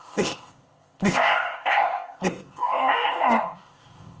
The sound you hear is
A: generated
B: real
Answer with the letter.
A